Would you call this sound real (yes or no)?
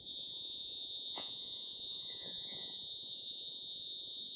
no